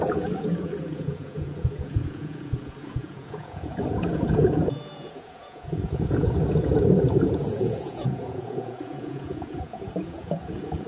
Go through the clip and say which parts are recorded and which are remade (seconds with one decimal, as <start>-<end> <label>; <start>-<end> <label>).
0.0-10.9 remade